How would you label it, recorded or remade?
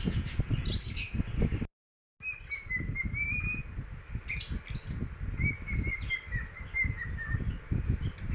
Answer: recorded